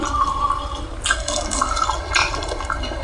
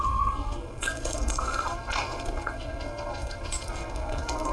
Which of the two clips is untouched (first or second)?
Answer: first